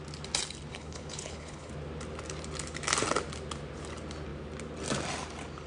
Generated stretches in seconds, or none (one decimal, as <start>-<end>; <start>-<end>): 0.7-1.7